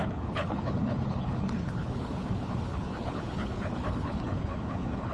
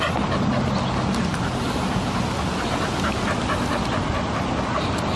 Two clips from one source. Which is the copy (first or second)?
first